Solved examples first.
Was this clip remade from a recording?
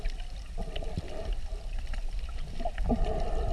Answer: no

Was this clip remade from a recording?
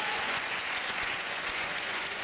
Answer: yes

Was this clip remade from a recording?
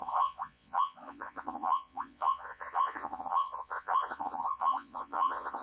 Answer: yes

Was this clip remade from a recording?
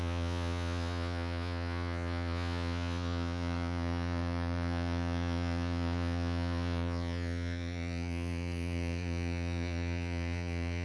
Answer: yes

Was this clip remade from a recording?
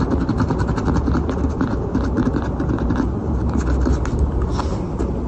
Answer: no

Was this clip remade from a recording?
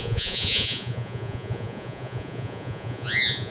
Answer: yes